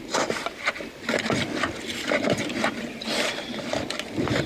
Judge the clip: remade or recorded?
recorded